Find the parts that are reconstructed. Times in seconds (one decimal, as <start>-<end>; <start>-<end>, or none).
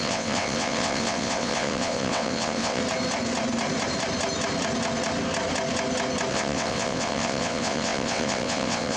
0.0-2.8; 6.3-9.0